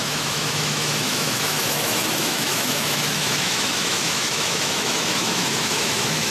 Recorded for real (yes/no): no